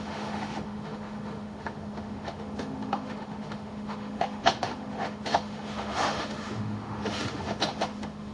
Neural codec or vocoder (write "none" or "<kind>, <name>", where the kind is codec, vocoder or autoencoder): autoencoder, DAC-VAE